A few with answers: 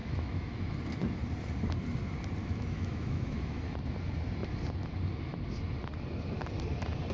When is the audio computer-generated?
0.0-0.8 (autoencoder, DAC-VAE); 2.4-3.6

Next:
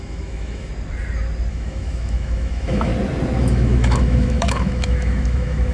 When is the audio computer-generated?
0.0-0.7 (autoencoder, DAC-VAE); 1.5-2.9; 3.4-5.7

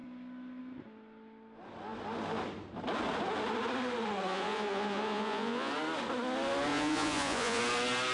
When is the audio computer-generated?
4.3-5.7 (vocoder, Vocos); 6.7-7.6

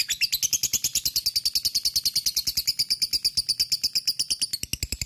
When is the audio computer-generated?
none

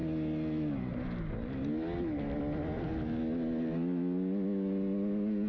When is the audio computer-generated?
none

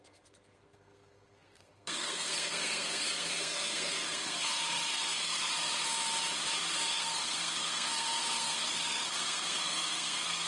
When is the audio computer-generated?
0.0-5.8 (codec, SNAC); 6.9-10.5